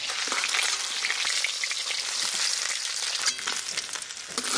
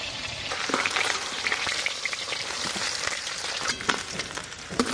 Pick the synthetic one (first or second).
second